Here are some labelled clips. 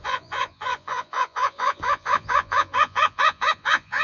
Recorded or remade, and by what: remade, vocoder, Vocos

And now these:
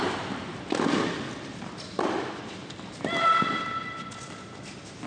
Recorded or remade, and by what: recorded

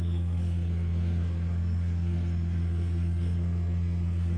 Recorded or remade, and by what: remade, codec, SNAC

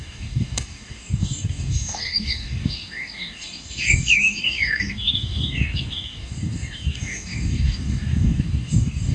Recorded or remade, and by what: remade, codec, DAC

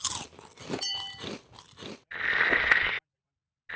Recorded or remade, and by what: recorded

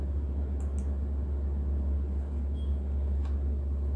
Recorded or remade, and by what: recorded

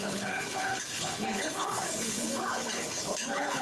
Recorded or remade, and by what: remade, codec, HILCodec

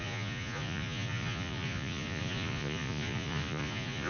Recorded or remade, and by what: remade, vocoder, Vocos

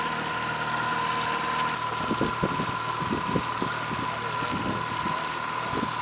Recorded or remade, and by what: recorded